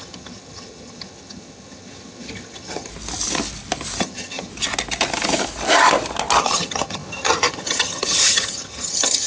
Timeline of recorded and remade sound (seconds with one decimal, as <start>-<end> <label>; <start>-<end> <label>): 0.0-2.9 remade; 2.9-4.0 recorded; 4.0-4.5 remade; 4.5-6.4 recorded; 6.4-9.3 remade